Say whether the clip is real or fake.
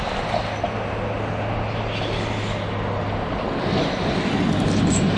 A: real